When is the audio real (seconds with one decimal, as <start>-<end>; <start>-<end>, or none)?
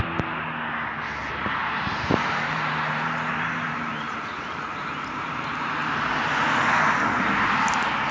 0.0-1.3; 6.0-8.1